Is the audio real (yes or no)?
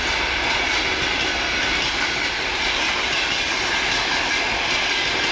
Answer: yes